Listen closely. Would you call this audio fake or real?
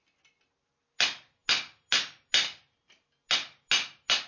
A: real